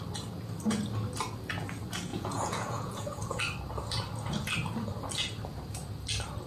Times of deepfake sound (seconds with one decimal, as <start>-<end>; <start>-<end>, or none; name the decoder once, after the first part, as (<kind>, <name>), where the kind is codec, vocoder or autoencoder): 2.1-3.4 (vocoder, Vocos)